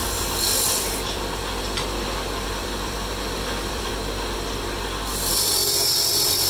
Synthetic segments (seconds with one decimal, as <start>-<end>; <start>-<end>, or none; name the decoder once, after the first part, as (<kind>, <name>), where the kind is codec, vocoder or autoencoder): 0.0-3.9 (vocoder, BigVGAN v2)